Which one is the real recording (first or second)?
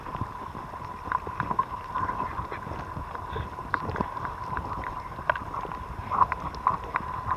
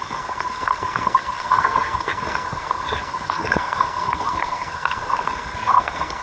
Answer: first